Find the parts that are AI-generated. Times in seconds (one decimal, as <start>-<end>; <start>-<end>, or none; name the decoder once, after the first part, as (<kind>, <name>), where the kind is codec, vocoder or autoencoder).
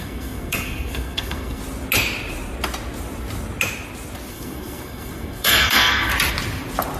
0.0-1.6 (codec, SNAC); 4.3-6.1